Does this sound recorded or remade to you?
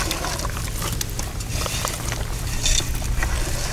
recorded